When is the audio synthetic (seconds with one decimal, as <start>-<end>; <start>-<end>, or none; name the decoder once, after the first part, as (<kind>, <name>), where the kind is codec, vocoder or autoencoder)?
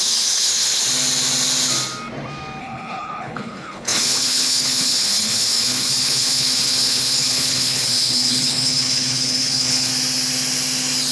0.0-0.8 (codec, HILCodec); 2.6-9.9